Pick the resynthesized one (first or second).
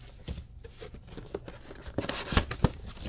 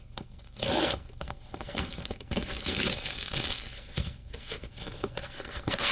second